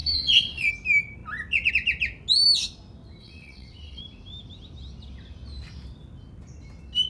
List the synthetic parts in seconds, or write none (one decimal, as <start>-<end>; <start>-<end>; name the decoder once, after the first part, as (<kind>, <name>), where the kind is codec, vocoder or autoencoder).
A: 0.0-0.7 (vocoder, WaveNeXt); 3.2-4.0